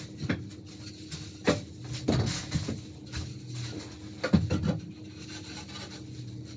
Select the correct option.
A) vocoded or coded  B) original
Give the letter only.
B